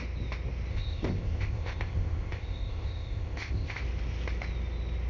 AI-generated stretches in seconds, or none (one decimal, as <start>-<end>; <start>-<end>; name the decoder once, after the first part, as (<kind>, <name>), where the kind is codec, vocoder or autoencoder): 0.7-3.8 (codec, ZipCodec)